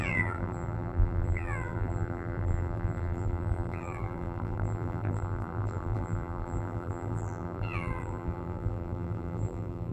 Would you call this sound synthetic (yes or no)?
yes